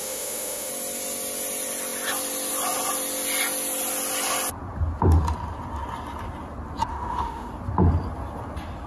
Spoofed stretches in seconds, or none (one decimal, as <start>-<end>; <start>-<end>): 0.0-0.7; 6.9-7.5